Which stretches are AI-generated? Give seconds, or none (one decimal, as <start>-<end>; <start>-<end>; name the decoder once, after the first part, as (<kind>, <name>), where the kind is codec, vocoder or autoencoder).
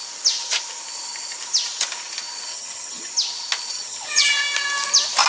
2.5-3.1 (vocoder, HiFi-GAN); 3.7-4.3